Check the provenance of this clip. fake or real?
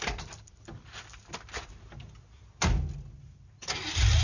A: real